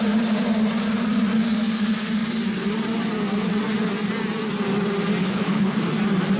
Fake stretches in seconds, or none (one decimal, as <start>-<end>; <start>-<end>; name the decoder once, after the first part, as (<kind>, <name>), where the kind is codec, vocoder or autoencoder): 5.2-5.8 (codec, HILCodec)